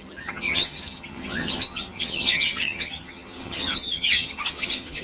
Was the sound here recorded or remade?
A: remade